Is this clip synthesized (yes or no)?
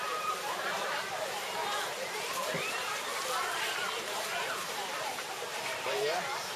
yes